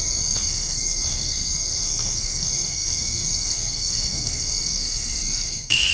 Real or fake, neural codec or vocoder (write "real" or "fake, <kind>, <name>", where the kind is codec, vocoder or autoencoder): fake, codec, SNAC